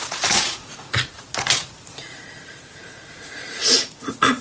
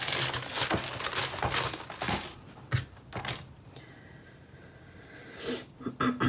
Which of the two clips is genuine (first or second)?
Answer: second